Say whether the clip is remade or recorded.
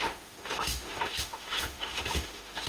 remade